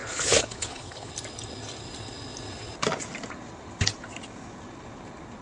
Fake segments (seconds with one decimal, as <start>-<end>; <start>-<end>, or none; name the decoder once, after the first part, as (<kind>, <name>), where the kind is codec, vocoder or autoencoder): 0.0-1.1 (codec, HILCodec)

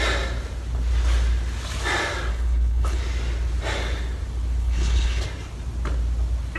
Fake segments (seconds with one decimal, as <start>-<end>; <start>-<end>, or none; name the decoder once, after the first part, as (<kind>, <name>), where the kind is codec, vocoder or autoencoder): 2.3-3.0 (codec, HILCodec); 4.6-5.2

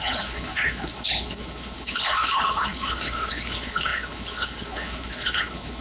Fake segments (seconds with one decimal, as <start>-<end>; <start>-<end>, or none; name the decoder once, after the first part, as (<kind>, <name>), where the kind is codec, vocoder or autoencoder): 0.0-5.8 (codec, HILCodec)